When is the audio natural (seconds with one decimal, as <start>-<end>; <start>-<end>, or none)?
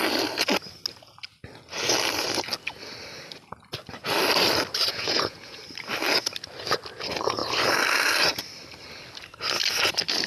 0.0-4.9; 5.6-10.3